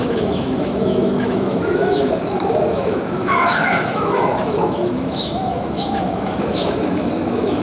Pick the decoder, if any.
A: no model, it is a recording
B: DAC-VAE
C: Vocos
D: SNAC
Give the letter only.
B